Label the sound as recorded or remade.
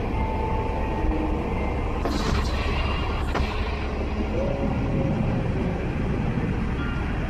recorded